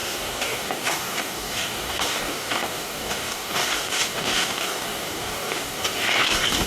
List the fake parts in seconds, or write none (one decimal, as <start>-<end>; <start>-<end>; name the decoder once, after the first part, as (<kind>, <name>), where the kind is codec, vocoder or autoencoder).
0.0-6.7 (codec, DAC)